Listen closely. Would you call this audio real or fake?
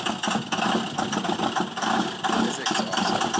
real